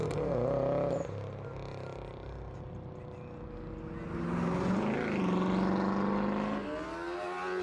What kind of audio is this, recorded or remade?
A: recorded